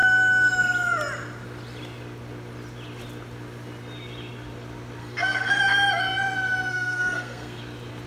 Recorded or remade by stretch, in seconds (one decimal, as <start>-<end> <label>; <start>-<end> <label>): 0.0-5.0 recorded; 5.0-5.6 remade; 5.6-6.7 recorded; 6.7-7.6 remade; 7.6-8.1 recorded